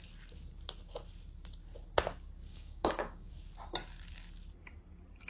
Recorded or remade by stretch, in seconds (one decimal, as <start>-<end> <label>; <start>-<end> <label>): 0.0-2.5 recorded; 2.5-3.3 remade; 3.3-5.3 recorded